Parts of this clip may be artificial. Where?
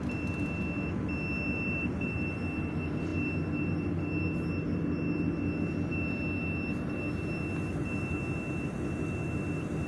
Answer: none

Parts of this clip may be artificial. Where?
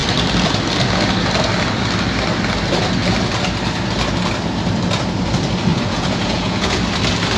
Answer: 5.7-6.8 (vocoder, Vocos)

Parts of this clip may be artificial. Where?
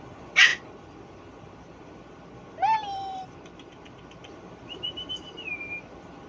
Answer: none